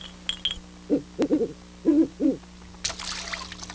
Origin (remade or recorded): recorded